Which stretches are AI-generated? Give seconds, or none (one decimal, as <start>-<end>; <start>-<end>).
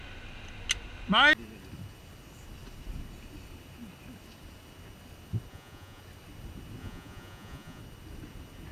5.5-6.0; 6.8-7.8